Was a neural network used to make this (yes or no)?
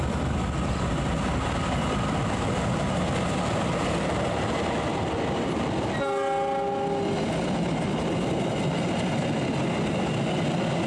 no